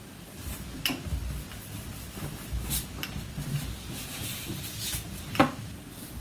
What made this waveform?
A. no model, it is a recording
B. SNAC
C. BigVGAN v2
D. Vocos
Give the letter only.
A